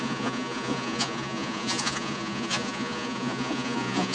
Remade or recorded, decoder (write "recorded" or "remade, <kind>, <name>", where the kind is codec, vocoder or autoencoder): remade, vocoder, Vocos